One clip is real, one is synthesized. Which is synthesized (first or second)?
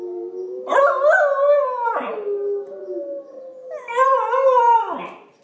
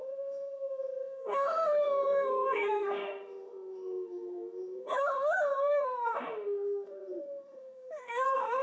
second